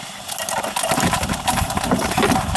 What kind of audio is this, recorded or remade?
recorded